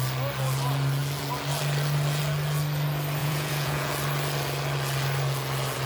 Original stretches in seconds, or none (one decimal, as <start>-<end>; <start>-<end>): 0.0-3.2; 3.9-5.9